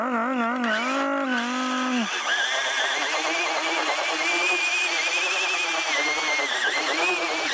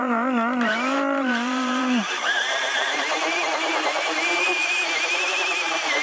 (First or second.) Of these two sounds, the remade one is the second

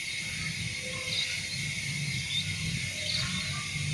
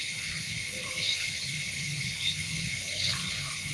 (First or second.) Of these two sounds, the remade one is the second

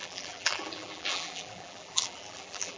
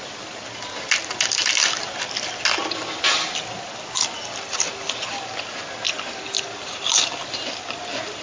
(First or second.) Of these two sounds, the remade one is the first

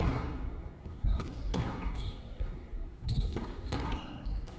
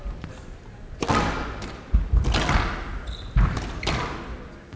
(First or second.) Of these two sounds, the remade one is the first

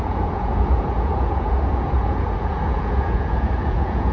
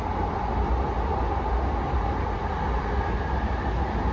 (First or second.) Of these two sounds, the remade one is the first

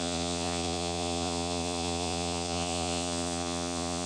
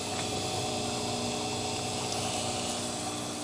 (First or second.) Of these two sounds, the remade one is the first